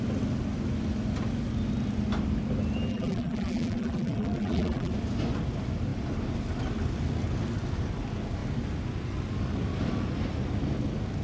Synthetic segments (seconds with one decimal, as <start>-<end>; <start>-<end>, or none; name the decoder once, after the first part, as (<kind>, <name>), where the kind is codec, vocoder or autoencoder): 2.9-4.9 (vocoder, BigVGAN v2)